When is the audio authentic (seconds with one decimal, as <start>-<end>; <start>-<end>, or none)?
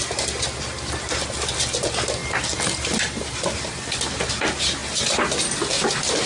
0.0-6.3